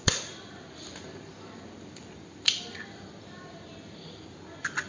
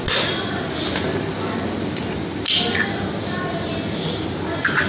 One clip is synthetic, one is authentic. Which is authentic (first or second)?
second